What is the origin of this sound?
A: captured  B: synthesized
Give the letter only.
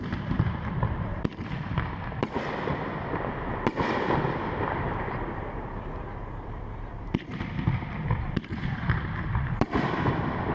B